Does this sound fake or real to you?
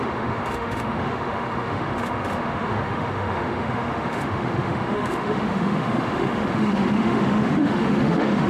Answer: fake